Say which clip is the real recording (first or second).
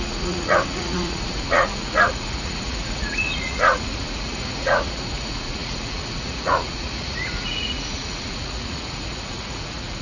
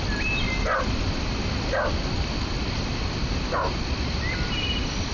second